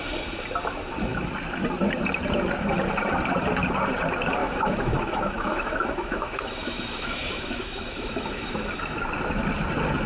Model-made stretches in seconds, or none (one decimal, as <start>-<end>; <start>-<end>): 4.4-8.5